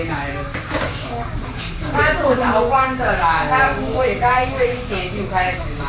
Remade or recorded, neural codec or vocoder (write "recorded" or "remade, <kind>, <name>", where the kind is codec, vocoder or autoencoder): remade, codec, DAC